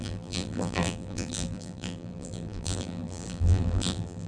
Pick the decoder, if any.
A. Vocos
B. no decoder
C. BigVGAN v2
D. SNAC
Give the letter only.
C